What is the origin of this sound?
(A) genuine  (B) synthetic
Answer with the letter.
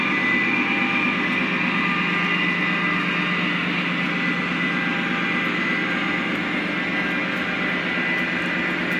A